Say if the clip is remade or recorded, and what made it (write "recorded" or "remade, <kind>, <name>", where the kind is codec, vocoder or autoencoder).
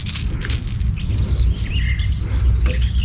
recorded